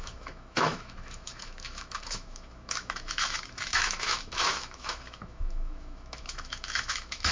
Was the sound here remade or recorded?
remade